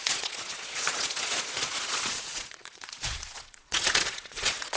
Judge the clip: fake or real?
fake